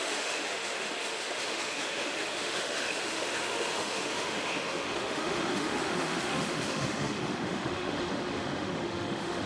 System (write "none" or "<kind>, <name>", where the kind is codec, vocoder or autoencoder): autoencoder, DAC-VAE